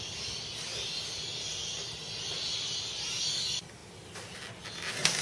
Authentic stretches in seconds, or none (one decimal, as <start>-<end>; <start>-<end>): 0.0-5.2